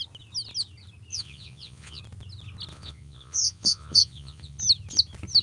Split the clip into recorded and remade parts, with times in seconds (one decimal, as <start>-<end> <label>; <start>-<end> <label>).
0.0-1.1 recorded; 1.1-2.0 remade; 2.0-2.7 recorded; 2.7-4.6 remade; 4.6-5.4 recorded